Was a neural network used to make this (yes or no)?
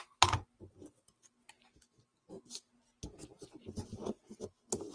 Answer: no